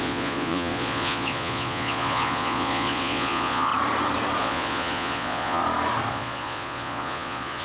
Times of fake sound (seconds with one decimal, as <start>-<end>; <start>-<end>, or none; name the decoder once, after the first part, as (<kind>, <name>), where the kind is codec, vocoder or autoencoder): 0.0-3.7 (vocoder, Vocos); 4.4-5.6; 6.1-7.6